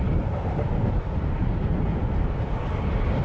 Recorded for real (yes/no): yes